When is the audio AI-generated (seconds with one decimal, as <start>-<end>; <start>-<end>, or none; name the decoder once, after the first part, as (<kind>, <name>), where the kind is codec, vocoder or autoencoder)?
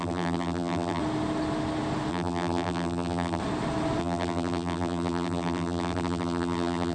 0.0-1.0 (vocoder, BigVGAN v2); 2.1-3.4; 4.0-6.9